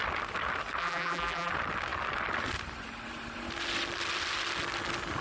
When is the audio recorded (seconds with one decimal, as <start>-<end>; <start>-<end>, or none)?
0.0-0.8; 1.5-5.2